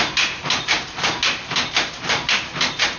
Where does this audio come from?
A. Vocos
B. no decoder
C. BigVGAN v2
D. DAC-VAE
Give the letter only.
B